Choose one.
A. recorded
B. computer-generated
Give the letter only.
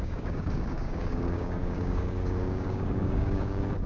B